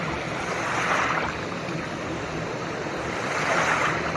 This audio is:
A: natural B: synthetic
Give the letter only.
B